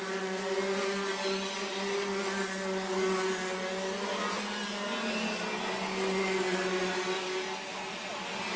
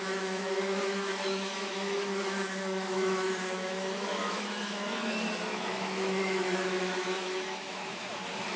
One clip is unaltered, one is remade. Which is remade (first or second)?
second